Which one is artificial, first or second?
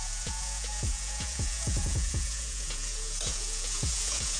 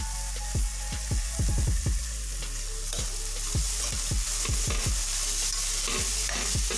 first